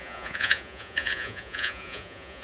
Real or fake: fake